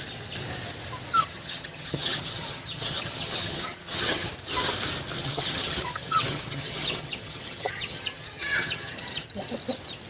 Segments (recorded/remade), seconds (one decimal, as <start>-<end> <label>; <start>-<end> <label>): 0.0-1.2 recorded; 1.2-4.3 remade; 4.3-5.2 recorded; 5.2-9.5 remade; 9.5-10.1 recorded